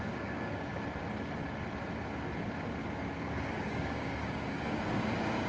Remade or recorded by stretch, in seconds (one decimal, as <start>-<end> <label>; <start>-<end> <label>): 0.0-0.7 remade; 0.7-3.1 recorded; 3.1-5.5 remade